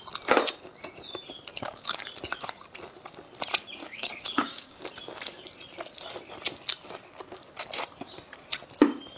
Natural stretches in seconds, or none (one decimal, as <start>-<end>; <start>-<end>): 0.0-1.5; 2.1-3.8; 4.8-9.2